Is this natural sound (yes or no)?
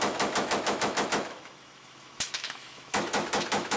no